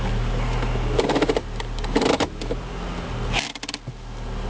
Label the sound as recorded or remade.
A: recorded